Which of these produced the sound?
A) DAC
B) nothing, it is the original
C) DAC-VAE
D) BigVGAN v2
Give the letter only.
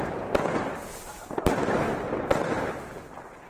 B